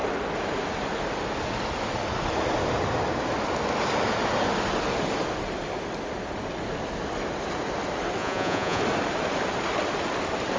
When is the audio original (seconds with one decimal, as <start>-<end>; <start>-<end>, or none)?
0.0-8.2; 8.8-10.6